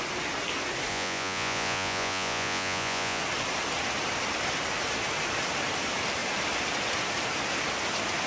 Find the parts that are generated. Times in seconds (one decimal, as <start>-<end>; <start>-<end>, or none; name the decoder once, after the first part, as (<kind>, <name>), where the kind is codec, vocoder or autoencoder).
0.9-3.2 (vocoder, Vocos)

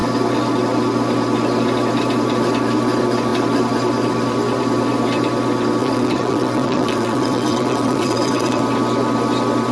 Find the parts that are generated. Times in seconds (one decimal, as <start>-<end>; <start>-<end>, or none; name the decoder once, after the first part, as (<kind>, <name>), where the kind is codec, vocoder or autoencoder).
5.8-8.6 (vocoder, WaveNeXt)